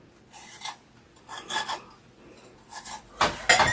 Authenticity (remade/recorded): recorded